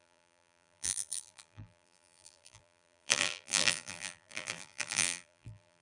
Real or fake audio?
fake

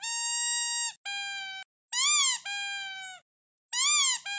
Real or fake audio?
real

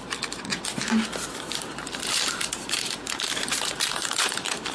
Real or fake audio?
fake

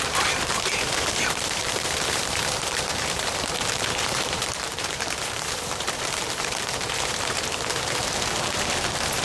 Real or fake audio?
fake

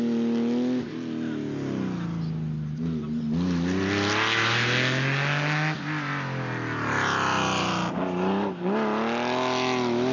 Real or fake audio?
real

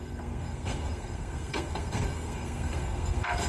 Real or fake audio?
fake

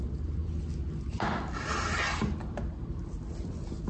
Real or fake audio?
real